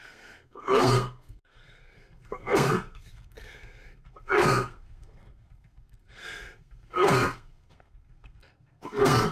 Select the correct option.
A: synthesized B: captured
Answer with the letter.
A